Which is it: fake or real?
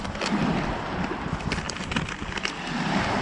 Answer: real